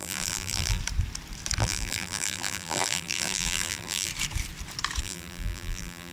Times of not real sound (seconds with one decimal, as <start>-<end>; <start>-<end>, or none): 0.0-0.8; 1.6-4.1; 5.0-6.1